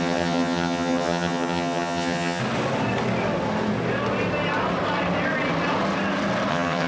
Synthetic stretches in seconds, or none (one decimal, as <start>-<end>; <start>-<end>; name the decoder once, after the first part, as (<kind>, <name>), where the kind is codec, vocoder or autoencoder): 0.0-2.4 (vocoder, HiFi-GAN); 6.5-6.9